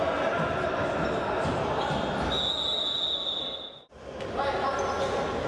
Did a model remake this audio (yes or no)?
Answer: no